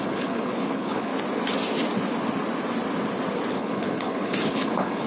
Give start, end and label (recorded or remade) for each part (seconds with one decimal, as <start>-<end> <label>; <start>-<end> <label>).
0.0-1.1 remade; 1.1-3.5 recorded; 3.5-5.1 remade